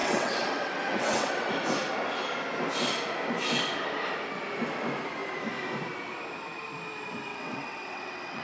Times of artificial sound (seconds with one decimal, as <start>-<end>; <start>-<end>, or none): 0.0-1.5; 7.3-8.4